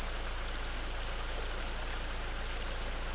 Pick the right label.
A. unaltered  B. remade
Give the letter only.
A